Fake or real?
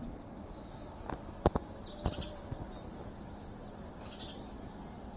real